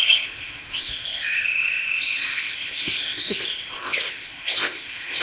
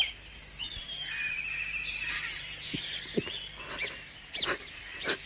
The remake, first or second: first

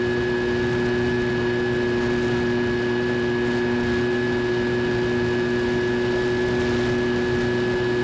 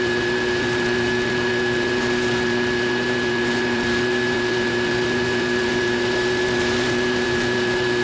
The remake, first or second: second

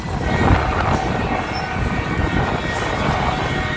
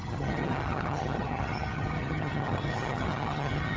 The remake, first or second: second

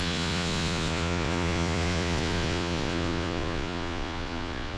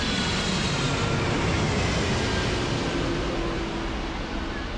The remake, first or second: first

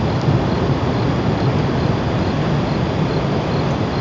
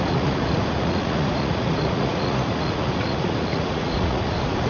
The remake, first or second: second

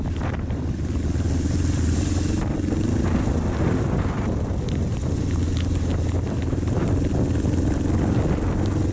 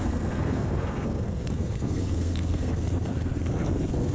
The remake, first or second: second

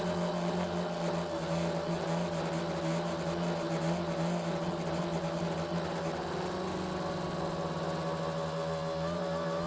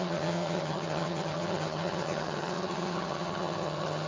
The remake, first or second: second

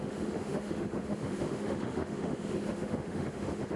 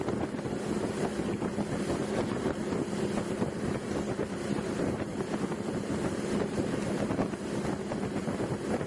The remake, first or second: first